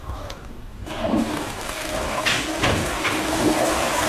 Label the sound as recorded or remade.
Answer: remade